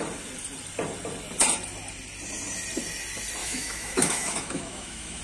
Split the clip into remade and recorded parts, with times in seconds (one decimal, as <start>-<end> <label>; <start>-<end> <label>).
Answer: 0.0-3.4 recorded; 3.4-5.2 remade